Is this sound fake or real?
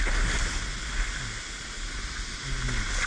real